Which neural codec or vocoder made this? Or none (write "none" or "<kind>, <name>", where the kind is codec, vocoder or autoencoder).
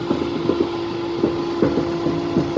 none